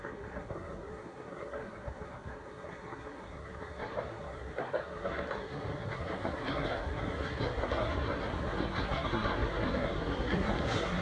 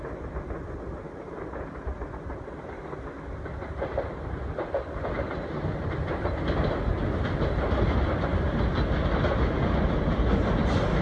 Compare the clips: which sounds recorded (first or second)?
second